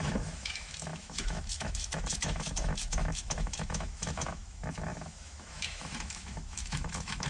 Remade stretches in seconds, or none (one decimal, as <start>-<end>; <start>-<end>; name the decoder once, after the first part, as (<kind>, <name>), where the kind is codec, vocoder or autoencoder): 0.0-7.3 (autoencoder, DAC-VAE)